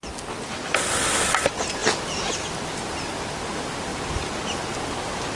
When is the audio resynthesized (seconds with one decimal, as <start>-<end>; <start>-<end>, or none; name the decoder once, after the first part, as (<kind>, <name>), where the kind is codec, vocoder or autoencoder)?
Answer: none